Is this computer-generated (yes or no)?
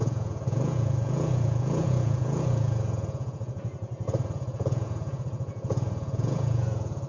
yes